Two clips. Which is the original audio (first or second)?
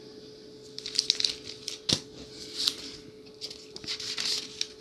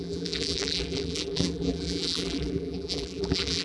first